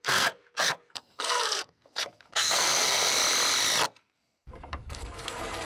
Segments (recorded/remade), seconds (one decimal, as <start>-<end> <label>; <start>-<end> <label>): 0.0-3.2 remade; 3.2-4.0 recorded; 4.0-5.7 remade